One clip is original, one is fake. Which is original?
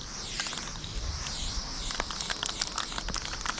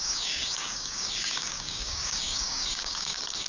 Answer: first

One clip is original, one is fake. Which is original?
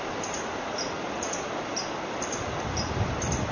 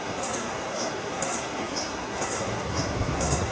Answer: first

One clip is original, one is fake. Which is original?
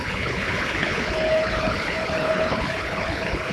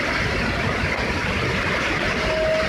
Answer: second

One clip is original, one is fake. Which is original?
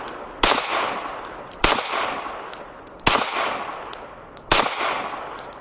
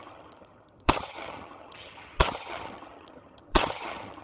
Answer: first